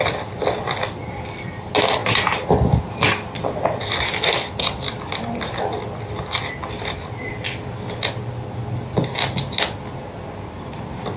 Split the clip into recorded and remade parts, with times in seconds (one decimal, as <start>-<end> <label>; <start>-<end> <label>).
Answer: 0.0-11.2 recorded

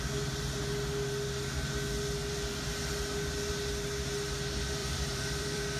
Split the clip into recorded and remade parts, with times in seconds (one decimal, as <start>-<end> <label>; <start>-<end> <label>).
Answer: 0.0-4.8 recorded; 4.8-5.8 remade

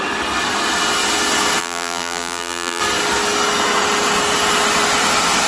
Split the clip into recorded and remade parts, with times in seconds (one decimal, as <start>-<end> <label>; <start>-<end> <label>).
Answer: 0.0-1.6 recorded; 1.6-2.8 remade; 2.8-5.5 recorded

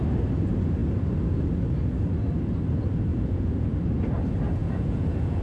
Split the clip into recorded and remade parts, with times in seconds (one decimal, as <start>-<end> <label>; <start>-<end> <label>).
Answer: 0.0-3.1 recorded; 3.1-3.7 remade; 3.7-4.6 recorded; 4.6-5.4 remade

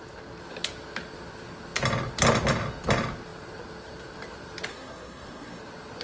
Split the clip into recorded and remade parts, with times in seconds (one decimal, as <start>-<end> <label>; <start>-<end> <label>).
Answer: 0.0-4.7 recorded; 4.7-5.6 remade; 5.6-6.0 recorded